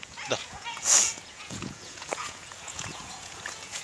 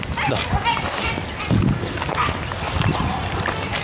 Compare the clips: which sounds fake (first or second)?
first